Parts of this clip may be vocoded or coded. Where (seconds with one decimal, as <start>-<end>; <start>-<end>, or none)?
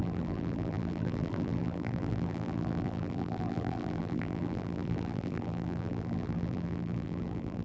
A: 0.0-7.6